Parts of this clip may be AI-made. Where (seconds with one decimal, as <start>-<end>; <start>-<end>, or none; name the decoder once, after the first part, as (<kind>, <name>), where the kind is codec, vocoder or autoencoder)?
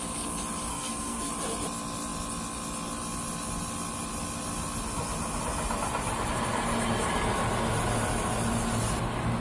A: 0.7-1.3 (codec, SNAC)